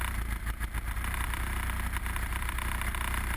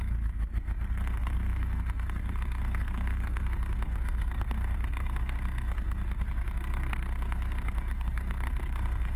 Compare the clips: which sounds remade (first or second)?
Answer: second